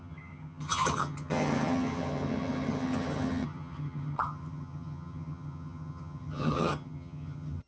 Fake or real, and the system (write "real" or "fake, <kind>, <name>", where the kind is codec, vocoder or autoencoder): fake, vocoder, HiFi-GAN